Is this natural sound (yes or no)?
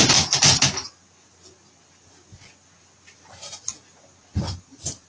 yes